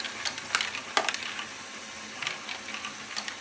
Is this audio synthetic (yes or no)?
no